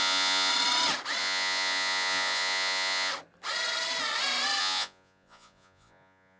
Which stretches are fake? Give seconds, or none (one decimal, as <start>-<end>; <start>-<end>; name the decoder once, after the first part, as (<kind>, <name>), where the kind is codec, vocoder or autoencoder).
0.0-0.5 (vocoder, Vocos); 1.2-3.1; 4.6-6.4